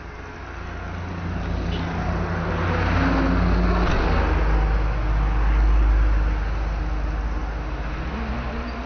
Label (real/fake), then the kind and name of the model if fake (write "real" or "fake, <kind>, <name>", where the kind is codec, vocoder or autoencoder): real